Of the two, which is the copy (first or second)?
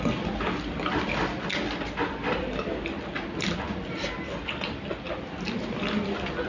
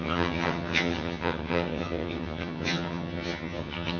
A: second